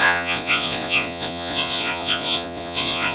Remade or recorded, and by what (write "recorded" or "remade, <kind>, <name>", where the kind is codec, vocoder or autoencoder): remade, vocoder, Vocos